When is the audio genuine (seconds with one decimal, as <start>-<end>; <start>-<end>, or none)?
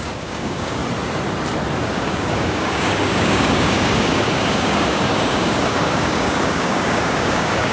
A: 0.8-1.8